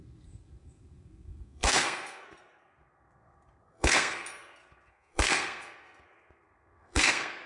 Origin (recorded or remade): remade